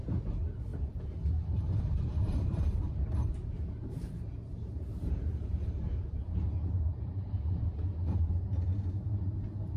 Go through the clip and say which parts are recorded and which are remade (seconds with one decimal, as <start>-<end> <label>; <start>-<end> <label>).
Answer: 0.0-9.8 remade